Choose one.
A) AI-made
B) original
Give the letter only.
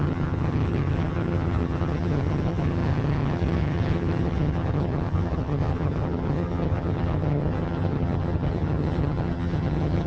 A